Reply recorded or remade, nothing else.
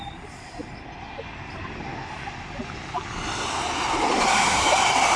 recorded